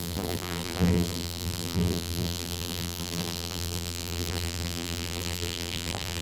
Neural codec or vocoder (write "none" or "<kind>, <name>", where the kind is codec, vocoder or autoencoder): vocoder, BigVGAN v2